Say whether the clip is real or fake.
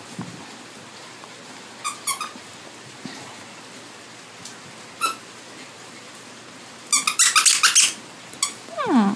real